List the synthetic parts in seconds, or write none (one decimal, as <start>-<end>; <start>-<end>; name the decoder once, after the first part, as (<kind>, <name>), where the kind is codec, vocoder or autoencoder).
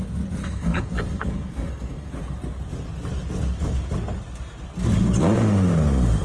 0.4-2.1 (codec, SNAC)